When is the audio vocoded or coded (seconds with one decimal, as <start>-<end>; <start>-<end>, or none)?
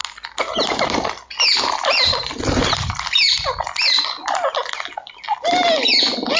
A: none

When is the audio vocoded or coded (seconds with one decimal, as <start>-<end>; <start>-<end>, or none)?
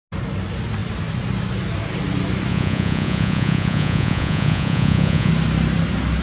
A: 2.5-5.3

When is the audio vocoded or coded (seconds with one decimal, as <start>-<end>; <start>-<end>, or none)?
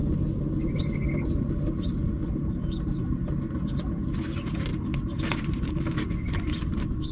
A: none